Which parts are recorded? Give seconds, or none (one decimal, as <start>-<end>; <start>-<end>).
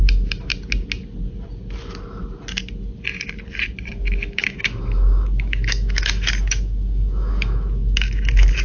0.5-3.9